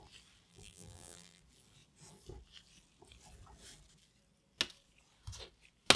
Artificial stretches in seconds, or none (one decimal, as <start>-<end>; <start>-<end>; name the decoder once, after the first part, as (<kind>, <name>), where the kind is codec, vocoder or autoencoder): 0.5-1.4 (vocoder, BigVGAN v2)